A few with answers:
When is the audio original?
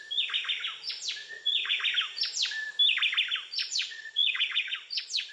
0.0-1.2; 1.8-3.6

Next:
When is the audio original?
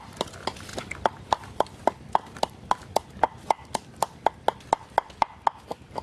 0.0-6.0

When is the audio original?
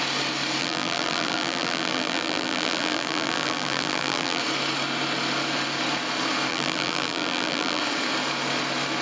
0.0-0.6; 4.4-6.5; 7.8-9.0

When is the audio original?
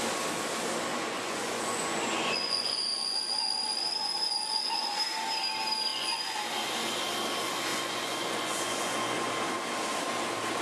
0.0-0.9; 5.0-5.9; 6.4-7.7; 9.3-10.6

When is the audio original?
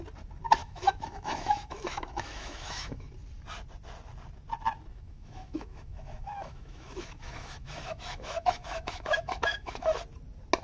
0.0-0.6; 3.1-4.9; 10.0-10.6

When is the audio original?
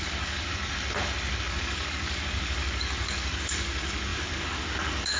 0.5-1.5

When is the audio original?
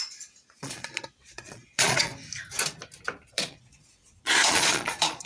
2.1-3.3